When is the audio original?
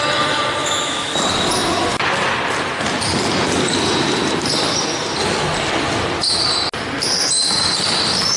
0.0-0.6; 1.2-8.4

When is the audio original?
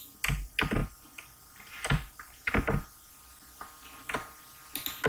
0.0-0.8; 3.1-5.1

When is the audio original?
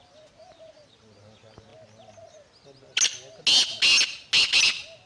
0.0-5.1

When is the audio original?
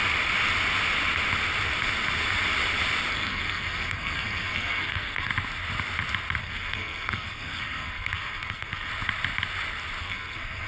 0.0-3.1; 5.3-6.4; 8.9-10.0